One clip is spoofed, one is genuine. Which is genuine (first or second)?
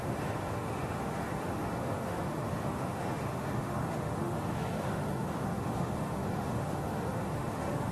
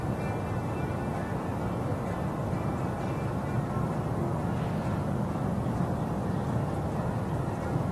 second